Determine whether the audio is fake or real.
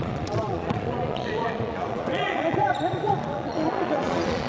fake